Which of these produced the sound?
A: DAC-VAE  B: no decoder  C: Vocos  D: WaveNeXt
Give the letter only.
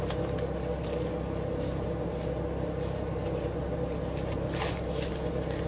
B